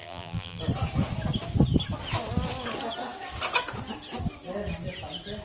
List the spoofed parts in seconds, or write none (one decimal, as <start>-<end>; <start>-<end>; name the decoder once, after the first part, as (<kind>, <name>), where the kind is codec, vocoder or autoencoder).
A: 0.0-0.6 (vocoder, BigVGAN v2)